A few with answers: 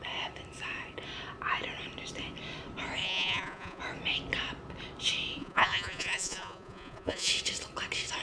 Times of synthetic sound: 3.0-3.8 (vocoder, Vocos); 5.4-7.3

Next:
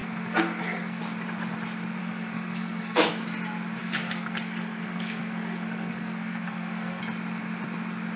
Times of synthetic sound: 0.0-1.0 (codec, SNAC); 2.0-3.1; 3.8-7.0

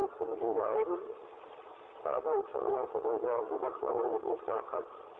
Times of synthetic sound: 0.0-5.2 (vocoder, Vocos)

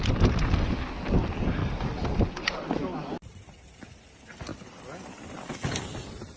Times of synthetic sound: none

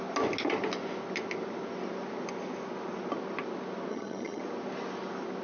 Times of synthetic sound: 3.9-4.4 (vocoder, HiFi-GAN)

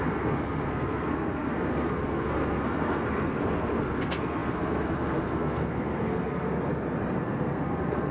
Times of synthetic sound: 0.0-6.7 (codec, SNAC); 7.2-8.1

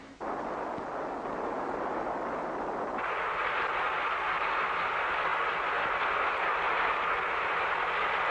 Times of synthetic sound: none